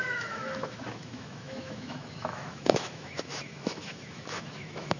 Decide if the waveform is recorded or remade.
remade